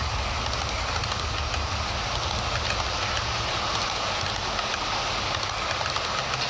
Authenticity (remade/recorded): recorded